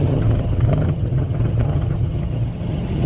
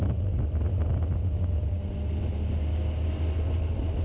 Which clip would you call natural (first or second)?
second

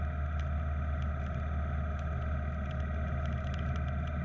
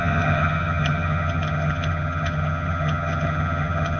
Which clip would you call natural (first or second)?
first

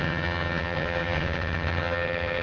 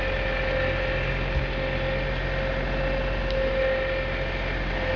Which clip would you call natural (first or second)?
second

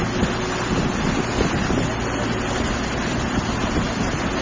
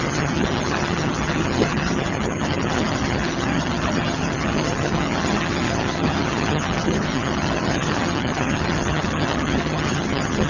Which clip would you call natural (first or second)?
first